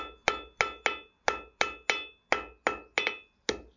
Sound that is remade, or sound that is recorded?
recorded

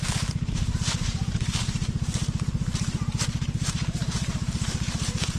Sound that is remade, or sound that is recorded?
remade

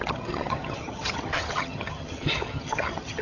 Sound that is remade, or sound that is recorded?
remade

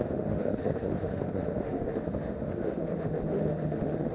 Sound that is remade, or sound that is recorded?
remade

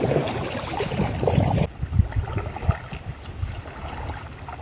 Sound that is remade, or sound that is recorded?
recorded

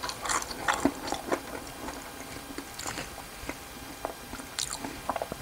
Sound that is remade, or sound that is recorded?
recorded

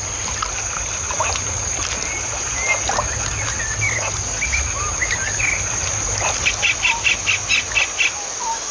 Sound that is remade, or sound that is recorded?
recorded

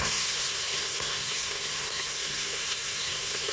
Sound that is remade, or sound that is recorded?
remade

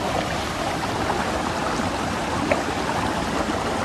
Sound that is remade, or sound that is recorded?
recorded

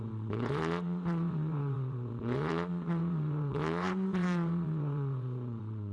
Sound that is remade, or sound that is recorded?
remade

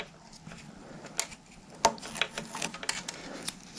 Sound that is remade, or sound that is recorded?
recorded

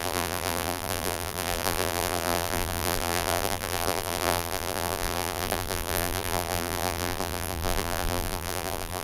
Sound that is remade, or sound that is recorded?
remade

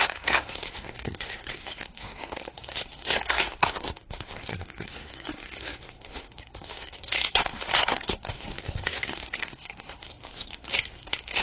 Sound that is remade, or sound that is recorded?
remade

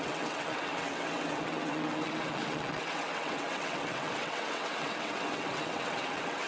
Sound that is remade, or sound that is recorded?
remade